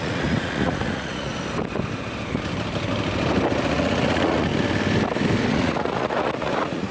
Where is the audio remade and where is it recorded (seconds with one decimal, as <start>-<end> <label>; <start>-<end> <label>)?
0.0-1.3 remade; 1.3-3.7 recorded; 3.7-4.5 remade; 4.5-5.5 recorded; 5.5-6.9 remade